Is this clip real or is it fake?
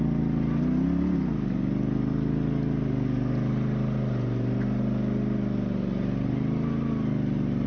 real